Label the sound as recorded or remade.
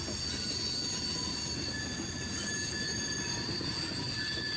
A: recorded